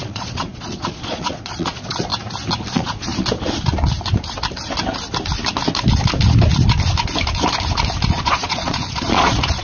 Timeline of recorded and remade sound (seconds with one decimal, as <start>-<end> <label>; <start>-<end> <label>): 0.0-2.1 remade; 2.1-2.7 recorded; 2.7-3.1 remade; 3.1-8.1 recorded; 8.1-9.6 remade